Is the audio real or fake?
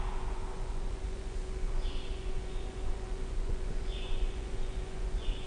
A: fake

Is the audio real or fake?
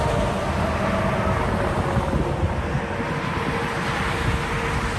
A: real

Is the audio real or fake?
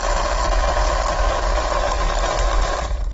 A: real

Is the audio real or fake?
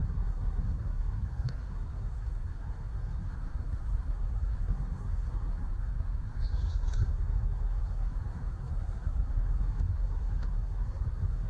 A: fake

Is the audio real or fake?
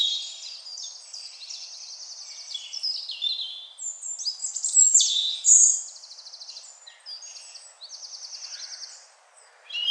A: real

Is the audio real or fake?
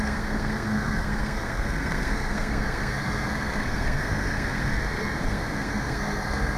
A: fake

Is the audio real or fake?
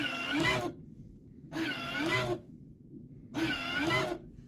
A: fake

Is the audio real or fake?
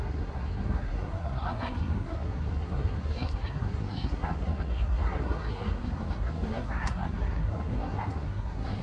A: fake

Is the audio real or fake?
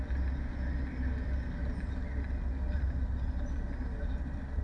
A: real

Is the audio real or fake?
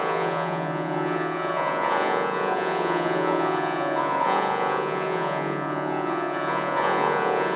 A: fake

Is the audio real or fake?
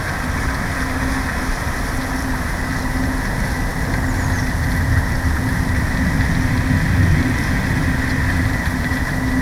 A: real